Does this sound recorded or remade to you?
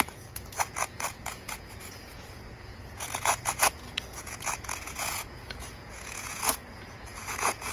remade